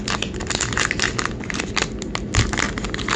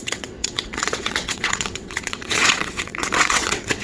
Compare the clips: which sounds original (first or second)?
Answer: first